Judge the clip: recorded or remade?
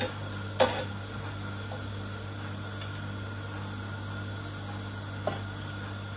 recorded